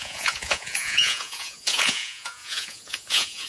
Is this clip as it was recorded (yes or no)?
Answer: no